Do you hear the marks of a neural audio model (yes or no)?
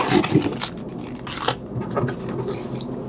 no